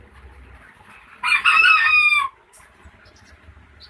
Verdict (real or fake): real